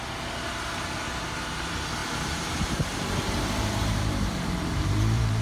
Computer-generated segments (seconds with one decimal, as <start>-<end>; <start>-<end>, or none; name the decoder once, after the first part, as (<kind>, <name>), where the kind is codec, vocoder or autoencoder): 2.0-5.4 (vocoder, BigVGAN v2)